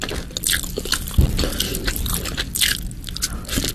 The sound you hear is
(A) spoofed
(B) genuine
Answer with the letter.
B